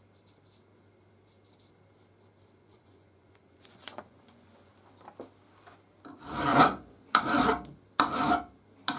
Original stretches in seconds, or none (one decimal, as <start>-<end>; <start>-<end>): 0.0-2.6; 4.7-6.5; 7.2-9.0